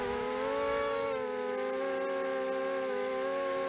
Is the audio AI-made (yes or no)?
no